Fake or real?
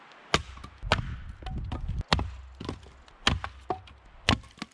real